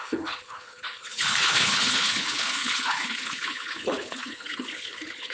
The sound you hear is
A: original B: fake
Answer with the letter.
B